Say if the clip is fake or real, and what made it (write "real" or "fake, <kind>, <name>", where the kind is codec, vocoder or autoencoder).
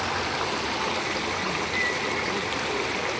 real